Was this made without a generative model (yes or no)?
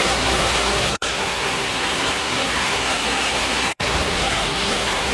no